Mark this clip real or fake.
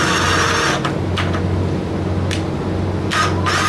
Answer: real